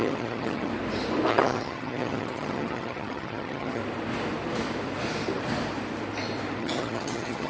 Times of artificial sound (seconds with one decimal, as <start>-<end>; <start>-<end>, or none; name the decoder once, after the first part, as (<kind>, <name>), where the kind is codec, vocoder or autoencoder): 0.0-0.7 (vocoder, HiFi-GAN); 1.3-3.8; 6.6-7.5